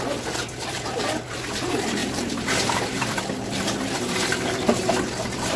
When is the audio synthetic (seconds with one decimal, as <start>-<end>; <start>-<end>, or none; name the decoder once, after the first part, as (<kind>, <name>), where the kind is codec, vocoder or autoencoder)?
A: 2.0-5.6 (vocoder, BigVGAN v2)